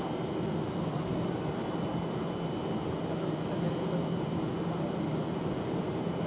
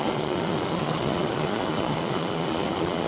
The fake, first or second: second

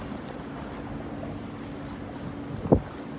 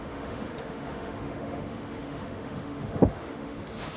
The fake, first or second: second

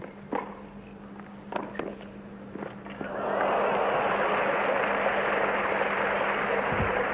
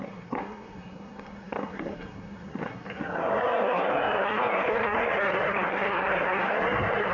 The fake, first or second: second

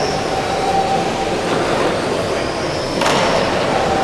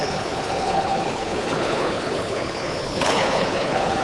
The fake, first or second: second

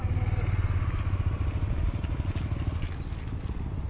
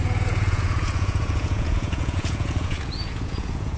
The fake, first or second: second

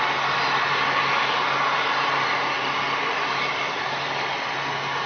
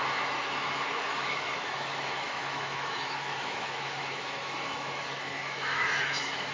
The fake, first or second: second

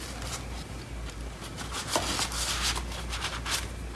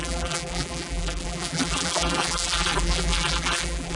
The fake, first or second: second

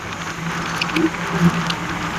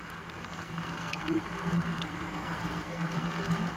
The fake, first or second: second